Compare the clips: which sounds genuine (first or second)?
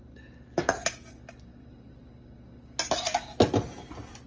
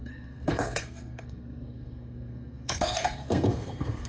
first